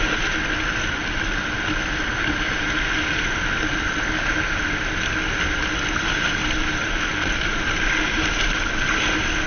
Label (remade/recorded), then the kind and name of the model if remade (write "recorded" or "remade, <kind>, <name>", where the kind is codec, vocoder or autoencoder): recorded